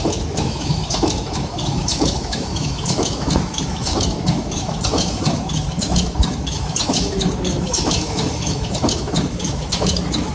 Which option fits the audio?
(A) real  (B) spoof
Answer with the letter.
B